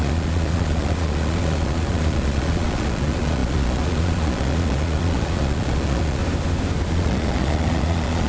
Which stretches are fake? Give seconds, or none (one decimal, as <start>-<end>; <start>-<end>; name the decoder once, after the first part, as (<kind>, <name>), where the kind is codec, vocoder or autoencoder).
0.0-6.2 (vocoder, Vocos); 6.9-8.3